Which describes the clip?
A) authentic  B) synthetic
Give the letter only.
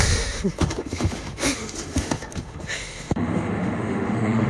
B